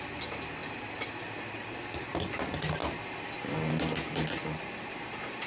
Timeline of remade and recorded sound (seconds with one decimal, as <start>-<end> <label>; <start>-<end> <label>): 0.0-5.5 remade